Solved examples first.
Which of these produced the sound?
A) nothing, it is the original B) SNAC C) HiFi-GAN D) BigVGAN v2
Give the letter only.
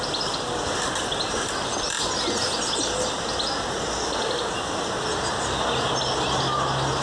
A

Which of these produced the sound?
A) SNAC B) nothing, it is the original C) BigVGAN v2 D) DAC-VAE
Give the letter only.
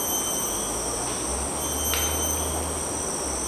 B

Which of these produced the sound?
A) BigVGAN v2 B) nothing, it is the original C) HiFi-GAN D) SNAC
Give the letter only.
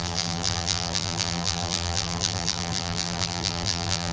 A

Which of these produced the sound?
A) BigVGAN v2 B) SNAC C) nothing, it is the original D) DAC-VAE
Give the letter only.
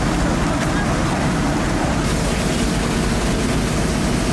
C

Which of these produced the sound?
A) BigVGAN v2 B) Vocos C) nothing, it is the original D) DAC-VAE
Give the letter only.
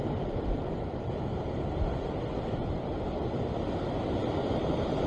A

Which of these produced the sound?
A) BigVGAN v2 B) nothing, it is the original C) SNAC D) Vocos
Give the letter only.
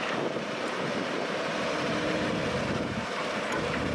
A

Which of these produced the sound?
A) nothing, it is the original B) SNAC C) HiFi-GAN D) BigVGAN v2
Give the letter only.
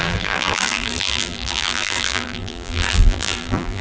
D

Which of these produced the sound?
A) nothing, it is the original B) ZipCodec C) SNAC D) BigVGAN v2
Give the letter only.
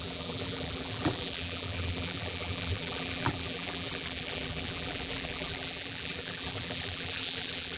D